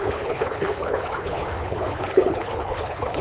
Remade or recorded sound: remade